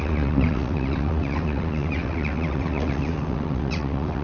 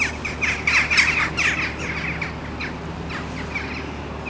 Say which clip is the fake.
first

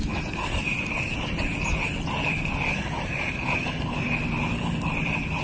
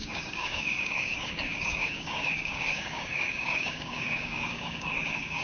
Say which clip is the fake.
second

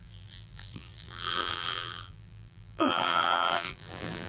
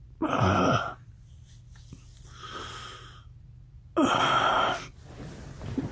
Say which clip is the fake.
first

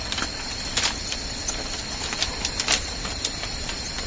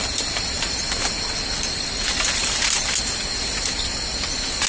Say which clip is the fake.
first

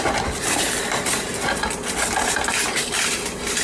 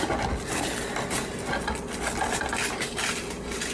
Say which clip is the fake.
first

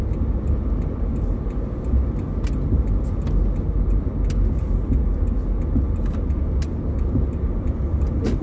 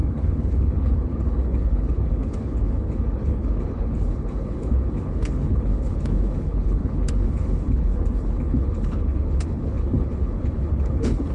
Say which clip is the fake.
second